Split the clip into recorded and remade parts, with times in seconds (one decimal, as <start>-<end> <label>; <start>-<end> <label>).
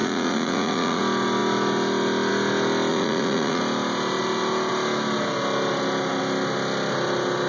0.0-1.0 remade; 1.0-2.9 recorded; 2.9-3.6 remade; 3.6-7.5 recorded